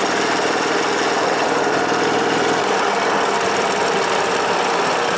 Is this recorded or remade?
remade